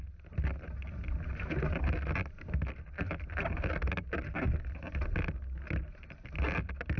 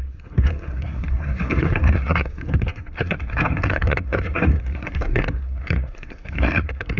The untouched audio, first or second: first